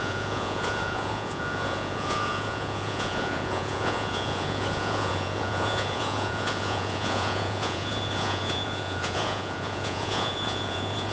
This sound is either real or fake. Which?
fake